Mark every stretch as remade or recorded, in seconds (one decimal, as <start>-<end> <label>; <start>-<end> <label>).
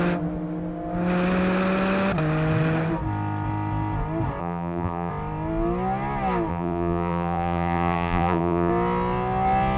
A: 0.0-4.4 recorded; 4.4-5.1 remade; 5.1-6.5 recorded; 6.5-8.7 remade; 8.7-9.8 recorded